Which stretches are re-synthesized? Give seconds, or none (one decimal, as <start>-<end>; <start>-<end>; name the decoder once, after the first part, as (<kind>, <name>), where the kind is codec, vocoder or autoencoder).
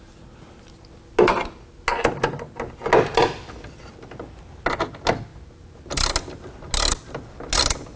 none